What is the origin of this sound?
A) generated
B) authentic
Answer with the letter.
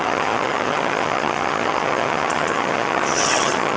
A